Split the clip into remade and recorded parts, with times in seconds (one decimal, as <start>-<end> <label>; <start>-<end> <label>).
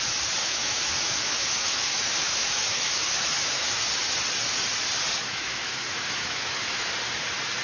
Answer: 0.0-0.4 recorded; 0.4-3.8 remade; 3.8-5.1 recorded; 5.1-6.9 remade; 6.9-7.6 recorded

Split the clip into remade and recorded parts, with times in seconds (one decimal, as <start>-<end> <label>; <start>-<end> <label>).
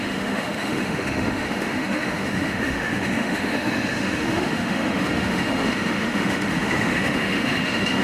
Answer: 0.0-8.0 remade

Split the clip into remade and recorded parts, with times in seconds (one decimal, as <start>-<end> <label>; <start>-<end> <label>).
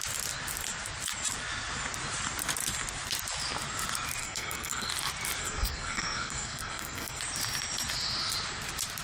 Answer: 0.0-4.2 recorded; 4.2-4.9 remade; 4.9-5.4 recorded; 5.4-7.2 remade; 7.2-9.0 recorded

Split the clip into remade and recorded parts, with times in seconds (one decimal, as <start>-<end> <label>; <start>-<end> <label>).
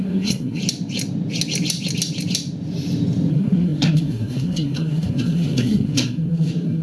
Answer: 0.0-0.6 remade; 0.6-3.3 recorded; 3.3-6.8 remade